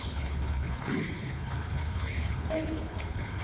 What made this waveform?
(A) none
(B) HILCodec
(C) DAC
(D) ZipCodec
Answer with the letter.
B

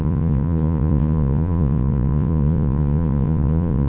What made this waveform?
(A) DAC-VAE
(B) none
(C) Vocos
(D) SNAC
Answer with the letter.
C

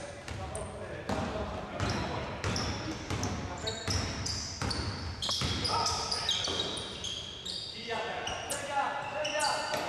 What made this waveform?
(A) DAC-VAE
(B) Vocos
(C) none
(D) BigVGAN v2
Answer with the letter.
D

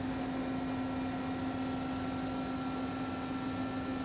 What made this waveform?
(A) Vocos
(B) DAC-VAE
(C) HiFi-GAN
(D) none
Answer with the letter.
D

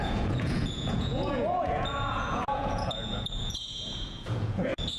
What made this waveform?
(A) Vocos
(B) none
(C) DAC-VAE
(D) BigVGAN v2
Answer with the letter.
A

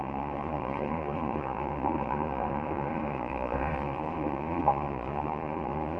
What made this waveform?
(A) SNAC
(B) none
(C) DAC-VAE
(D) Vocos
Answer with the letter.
D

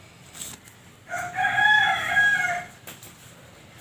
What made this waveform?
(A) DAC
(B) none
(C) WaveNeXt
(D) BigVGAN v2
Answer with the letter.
B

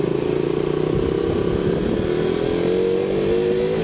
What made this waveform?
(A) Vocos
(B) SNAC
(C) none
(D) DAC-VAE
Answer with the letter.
C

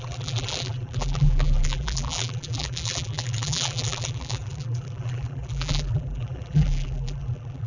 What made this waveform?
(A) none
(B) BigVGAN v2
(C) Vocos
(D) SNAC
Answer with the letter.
B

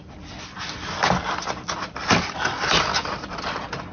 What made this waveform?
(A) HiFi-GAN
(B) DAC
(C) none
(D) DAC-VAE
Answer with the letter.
C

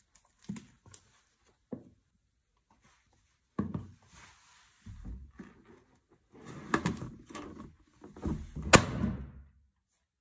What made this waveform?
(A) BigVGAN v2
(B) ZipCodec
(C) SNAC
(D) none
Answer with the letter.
D